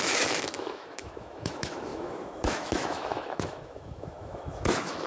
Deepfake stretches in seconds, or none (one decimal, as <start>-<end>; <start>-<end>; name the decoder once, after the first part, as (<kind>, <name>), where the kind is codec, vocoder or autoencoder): 0.0-5.1 (autoencoder, DAC-VAE)